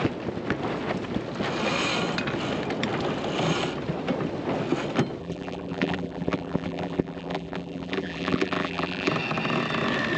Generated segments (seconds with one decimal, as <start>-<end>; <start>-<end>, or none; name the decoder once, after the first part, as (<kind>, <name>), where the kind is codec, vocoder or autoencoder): 5.2-9.1 (vocoder, BigVGAN v2)